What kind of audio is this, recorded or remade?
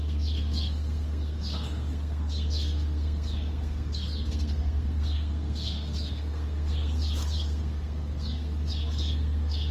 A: remade